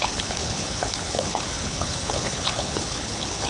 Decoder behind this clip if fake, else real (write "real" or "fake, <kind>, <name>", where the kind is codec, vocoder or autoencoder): fake, codec, HILCodec